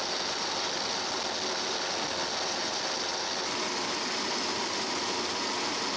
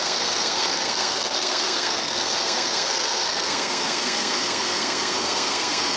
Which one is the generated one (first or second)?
second